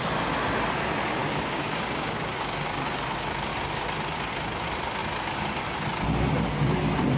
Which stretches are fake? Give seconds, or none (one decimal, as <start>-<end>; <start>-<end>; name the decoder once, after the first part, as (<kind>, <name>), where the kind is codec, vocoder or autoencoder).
1.2-2.3 (codec, DAC)